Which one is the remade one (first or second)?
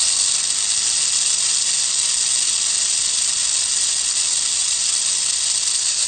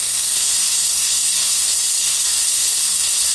second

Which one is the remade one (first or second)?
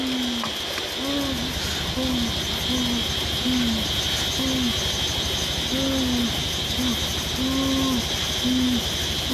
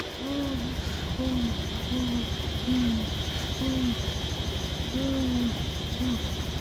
second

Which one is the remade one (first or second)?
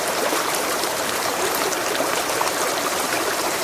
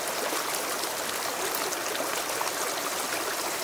first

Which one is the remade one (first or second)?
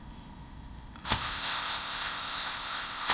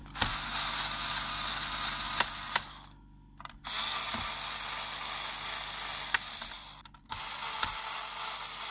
first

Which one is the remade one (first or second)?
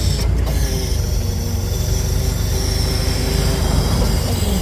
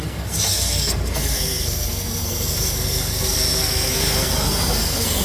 second